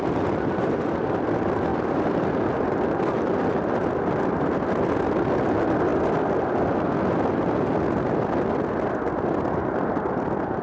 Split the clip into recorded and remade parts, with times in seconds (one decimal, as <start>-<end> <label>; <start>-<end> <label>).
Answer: 0.0-1.7 recorded; 1.7-2.9 remade; 2.9-3.5 recorded; 3.5-4.8 remade; 4.8-5.9 recorded; 5.9-6.6 remade; 6.6-10.6 recorded